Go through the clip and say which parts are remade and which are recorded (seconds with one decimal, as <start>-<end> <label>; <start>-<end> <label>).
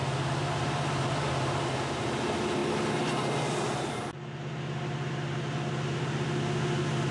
0.0-7.1 recorded